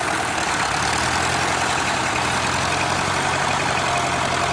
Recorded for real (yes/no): yes